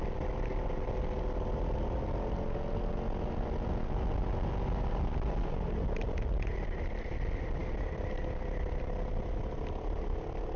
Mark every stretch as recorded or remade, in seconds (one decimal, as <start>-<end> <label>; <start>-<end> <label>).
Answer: 0.0-7.6 recorded; 7.6-10.6 remade